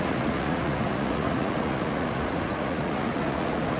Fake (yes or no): yes